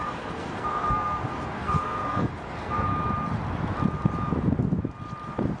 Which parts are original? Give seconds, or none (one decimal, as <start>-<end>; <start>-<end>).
2.9-5.6